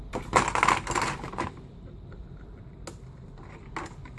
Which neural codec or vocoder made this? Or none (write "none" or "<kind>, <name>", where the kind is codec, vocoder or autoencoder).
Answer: none